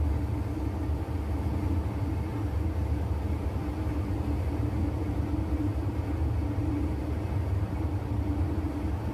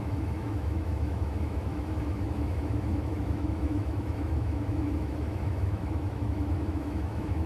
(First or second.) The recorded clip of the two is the first